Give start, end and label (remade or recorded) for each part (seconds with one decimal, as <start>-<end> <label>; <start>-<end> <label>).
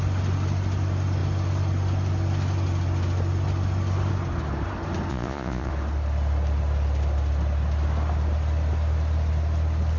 0.0-5.1 recorded; 5.1-5.7 remade; 5.7-10.0 recorded